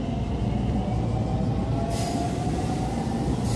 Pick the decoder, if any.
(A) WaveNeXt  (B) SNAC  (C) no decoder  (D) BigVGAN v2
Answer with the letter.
C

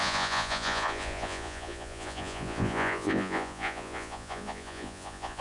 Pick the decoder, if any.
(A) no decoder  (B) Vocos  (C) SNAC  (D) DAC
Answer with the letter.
B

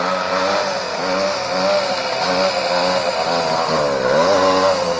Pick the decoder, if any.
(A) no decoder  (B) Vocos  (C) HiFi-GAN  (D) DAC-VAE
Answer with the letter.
A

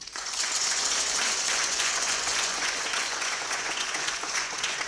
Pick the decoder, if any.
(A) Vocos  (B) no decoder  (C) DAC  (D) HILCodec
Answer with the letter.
A